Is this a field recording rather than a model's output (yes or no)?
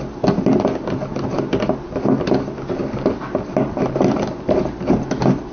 yes